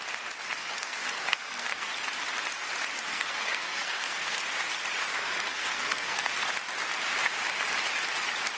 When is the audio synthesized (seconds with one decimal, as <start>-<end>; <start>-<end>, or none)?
0.6-1.9; 3.1-4.4; 5.1-6.3